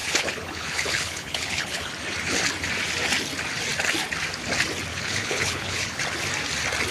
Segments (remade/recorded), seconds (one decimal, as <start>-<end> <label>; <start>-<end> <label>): 0.0-1.9 remade; 1.9-4.9 recorded; 4.9-6.0 remade; 6.0-6.9 recorded